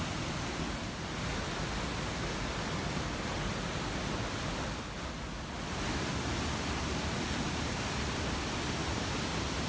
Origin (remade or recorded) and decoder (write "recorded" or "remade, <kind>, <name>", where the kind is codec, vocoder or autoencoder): recorded